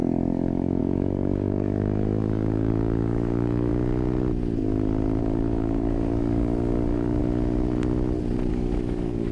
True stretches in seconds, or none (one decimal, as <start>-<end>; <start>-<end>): 3.7-5.2; 7.2-8.5